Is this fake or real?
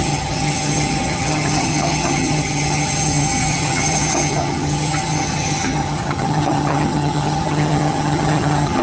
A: fake